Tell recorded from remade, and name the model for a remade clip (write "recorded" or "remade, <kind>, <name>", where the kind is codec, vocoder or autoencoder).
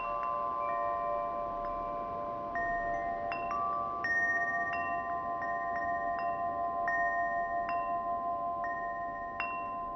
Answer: recorded